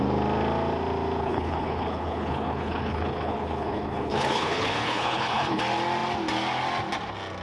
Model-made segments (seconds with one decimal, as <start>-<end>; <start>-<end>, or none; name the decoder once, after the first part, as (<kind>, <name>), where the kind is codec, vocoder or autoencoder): 1.2-5.6 (codec, HILCodec)